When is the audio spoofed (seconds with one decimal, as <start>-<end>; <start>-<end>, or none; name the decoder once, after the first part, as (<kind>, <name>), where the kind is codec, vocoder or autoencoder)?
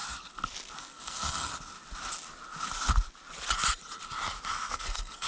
0.8-1.5 (codec, SNAC); 4.7-5.3